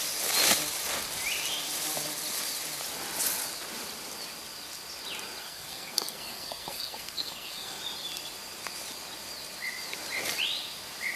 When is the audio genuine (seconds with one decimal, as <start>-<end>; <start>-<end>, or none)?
0.0-5.4; 7.8-11.2